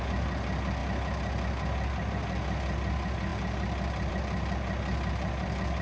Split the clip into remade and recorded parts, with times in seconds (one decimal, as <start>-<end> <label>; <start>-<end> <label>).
0.0-5.8 recorded